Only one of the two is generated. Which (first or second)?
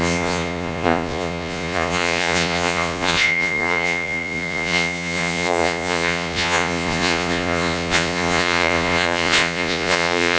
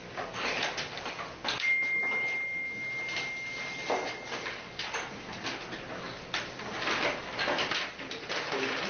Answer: first